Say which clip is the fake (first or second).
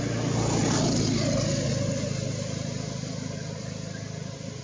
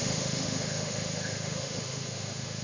second